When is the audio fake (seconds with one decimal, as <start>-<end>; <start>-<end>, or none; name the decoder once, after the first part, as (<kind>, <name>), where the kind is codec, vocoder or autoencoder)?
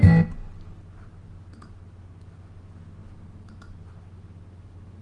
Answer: none